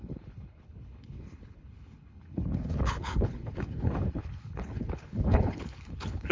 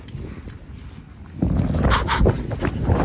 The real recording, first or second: second